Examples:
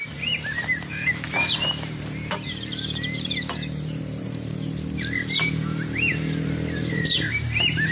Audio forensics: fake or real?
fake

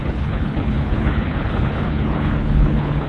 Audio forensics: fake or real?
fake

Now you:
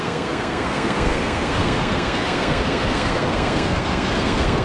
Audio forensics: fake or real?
fake